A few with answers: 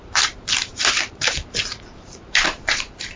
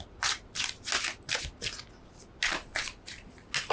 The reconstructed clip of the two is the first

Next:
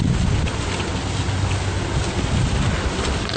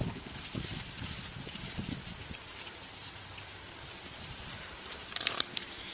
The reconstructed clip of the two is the second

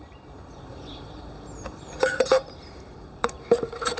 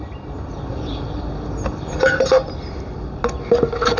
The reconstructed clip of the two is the first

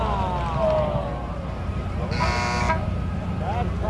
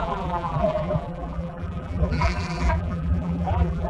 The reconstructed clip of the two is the second